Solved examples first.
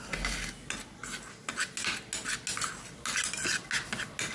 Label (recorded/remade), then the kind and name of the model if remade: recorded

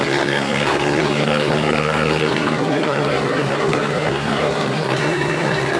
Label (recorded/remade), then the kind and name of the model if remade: remade, codec, SNAC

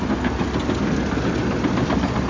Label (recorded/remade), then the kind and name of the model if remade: recorded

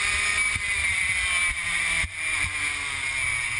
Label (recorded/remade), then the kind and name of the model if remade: recorded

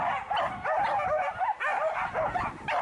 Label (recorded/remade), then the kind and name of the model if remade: recorded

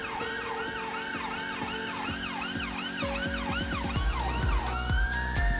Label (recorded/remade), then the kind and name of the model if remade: recorded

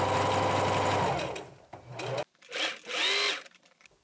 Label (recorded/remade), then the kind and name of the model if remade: recorded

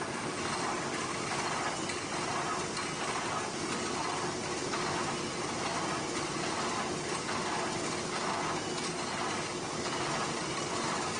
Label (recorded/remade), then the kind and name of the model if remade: recorded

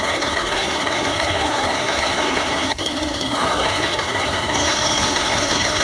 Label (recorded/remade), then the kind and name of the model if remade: remade, codec, SNAC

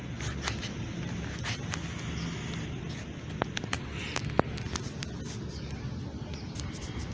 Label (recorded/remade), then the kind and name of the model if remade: recorded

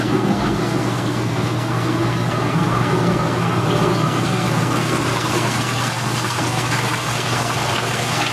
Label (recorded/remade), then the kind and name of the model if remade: remade, codec, SNAC